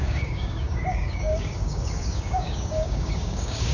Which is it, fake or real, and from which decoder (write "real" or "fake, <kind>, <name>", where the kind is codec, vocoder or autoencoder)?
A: fake, codec, DAC